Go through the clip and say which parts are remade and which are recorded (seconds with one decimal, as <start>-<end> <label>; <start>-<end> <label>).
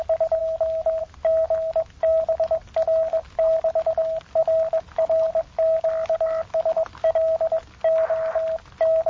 0.0-9.1 recorded